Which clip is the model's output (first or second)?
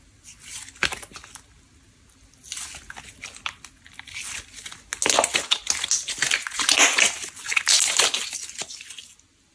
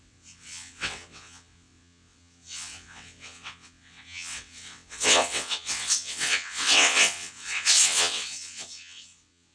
second